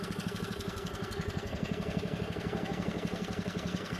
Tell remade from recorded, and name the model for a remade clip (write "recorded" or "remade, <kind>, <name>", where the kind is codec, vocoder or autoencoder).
remade, codec, SNAC